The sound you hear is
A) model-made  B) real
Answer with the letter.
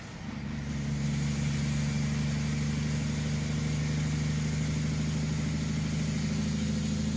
B